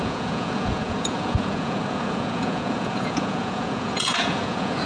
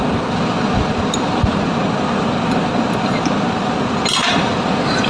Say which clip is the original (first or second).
second